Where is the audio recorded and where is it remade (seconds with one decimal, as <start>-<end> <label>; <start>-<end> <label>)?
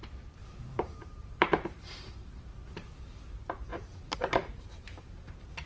0.0-0.4 recorded; 0.4-3.2 remade; 3.2-3.7 recorded; 3.7-5.7 remade